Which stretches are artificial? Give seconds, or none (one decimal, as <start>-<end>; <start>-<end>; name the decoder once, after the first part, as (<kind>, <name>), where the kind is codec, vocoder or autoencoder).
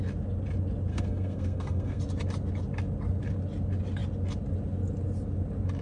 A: 0.9-2.0 (codec, SNAC)